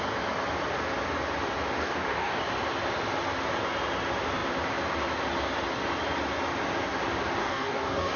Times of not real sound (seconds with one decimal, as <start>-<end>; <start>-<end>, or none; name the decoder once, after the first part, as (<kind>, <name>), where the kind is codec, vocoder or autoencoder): 1.8-2.4 (codec, DAC); 7.4-8.2